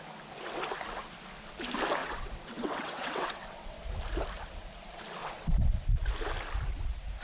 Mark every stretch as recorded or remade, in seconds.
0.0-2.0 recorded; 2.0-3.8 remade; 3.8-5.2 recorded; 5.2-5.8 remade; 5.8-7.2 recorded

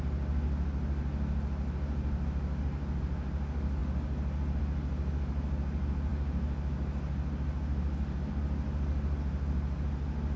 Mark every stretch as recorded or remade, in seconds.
0.0-10.4 recorded

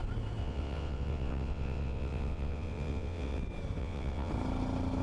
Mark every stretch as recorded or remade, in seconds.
0.0-0.4 recorded; 0.4-3.4 remade; 3.4-3.8 recorded; 3.8-4.3 remade; 4.3-5.0 recorded

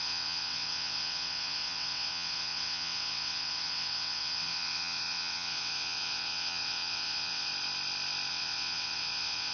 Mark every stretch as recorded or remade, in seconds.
0.0-7.5 remade; 7.5-8.3 recorded; 8.3-9.5 remade

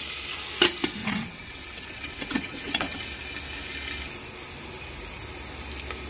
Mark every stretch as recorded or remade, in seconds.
0.0-1.0 recorded; 1.0-3.0 remade; 3.0-6.1 recorded